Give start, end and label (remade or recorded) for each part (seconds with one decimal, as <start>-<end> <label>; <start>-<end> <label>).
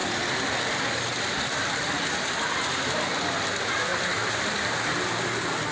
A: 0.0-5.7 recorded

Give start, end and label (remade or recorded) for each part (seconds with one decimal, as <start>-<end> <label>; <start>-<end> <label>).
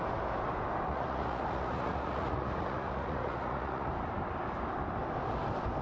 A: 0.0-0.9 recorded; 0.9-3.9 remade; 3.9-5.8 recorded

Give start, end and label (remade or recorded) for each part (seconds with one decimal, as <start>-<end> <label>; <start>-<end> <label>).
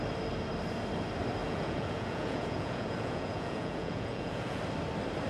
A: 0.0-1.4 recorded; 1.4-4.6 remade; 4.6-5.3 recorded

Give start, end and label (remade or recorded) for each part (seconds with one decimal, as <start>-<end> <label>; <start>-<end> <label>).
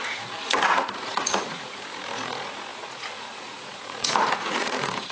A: 0.0-5.1 remade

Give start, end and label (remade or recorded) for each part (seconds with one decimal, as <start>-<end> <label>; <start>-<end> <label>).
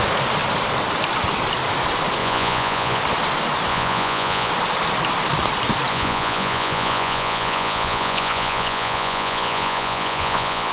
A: 0.0-2.2 recorded; 2.2-3.0 remade; 3.0-3.7 recorded; 3.7-4.5 remade; 4.5-5.9 recorded; 5.9-10.7 remade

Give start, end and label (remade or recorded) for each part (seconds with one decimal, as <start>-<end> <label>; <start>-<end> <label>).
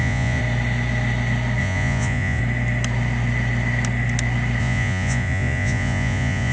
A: 0.0-0.4 remade; 0.4-1.6 recorded; 1.6-2.4 remade; 2.4-4.6 recorded; 4.6-6.5 remade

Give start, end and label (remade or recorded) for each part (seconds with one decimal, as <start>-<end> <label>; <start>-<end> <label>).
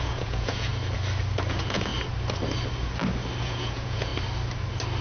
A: 0.0-0.7 remade; 0.7-1.5 recorded; 1.5-1.9 remade; 1.9-3.4 recorded; 3.4-4.1 remade; 4.1-5.0 recorded